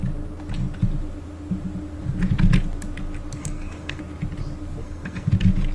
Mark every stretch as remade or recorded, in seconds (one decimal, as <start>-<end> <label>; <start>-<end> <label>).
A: 0.0-3.4 recorded; 3.4-4.0 remade; 4.0-4.8 recorded; 4.8-5.3 remade; 5.3-5.7 recorded